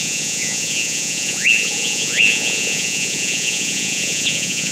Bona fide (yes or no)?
no